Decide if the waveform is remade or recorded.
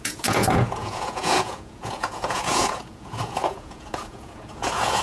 remade